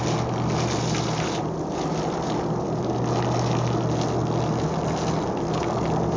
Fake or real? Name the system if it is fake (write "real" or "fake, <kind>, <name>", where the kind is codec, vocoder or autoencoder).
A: real